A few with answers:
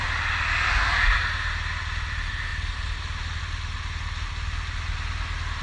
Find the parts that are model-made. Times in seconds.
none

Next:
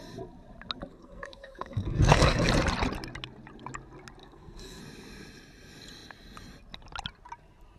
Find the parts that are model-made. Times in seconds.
0.9-2.5 (codec, SNAC); 4.2-4.8

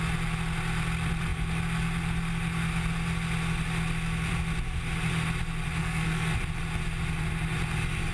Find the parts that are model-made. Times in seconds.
5.8-6.3 (codec, SNAC)

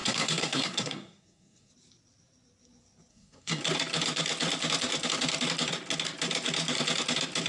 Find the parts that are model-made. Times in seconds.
0.0-1.7 (codec, SNAC); 3.1-3.6

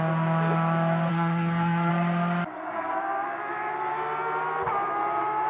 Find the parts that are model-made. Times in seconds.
1.1-1.9 (codec, SNAC)

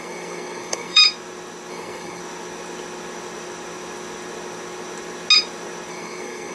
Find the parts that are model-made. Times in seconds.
0.0-1.0 (codec, SNAC); 1.7-2.2; 5.9-6.5

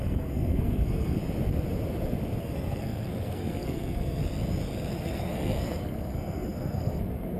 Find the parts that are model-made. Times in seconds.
0.0-1.2 (codec, SNAC); 2.4-4.2; 4.9-7.4

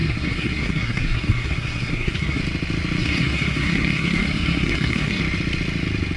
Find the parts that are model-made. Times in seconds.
0.0-2.4 (codec, SNAC); 3.0-5.2